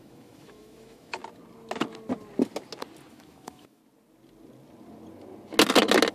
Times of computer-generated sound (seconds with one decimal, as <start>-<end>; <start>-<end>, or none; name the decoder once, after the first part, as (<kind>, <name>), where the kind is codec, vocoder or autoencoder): 0.0-1.2 (autoencoder, DAC-VAE); 3.1-3.8